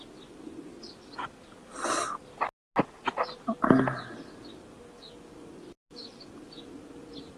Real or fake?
real